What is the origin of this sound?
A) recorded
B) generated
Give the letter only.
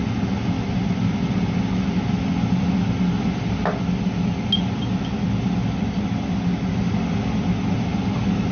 A